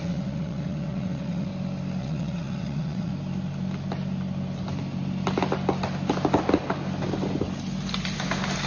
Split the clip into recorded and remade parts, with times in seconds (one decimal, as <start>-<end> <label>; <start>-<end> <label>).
0.0-1.5 remade; 1.5-2.0 recorded; 2.0-3.1 remade; 3.1-8.7 recorded